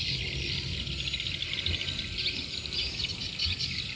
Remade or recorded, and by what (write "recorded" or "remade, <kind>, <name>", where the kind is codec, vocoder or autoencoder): recorded